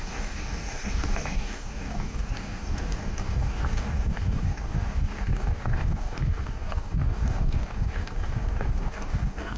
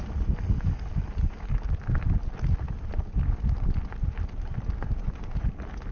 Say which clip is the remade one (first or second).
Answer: first